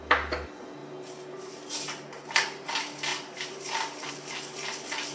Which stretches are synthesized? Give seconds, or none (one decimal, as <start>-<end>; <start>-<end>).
none